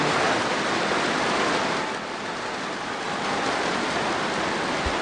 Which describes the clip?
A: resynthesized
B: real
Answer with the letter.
B